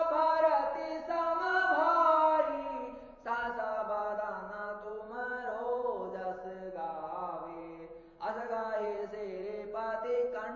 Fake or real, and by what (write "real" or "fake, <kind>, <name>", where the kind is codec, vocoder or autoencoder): fake, vocoder, Vocos